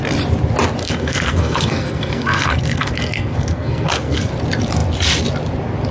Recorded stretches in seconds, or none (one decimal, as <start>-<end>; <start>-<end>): 0.0-0.8; 4.3-5.9